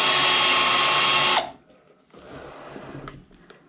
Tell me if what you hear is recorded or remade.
recorded